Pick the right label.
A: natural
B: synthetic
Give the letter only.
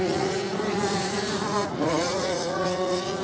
B